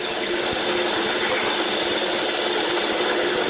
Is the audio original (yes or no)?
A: yes